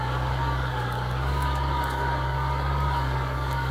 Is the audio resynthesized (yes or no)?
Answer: yes